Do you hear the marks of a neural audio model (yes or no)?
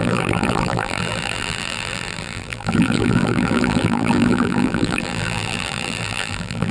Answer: yes